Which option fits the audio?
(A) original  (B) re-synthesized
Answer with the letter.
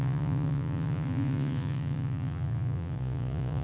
B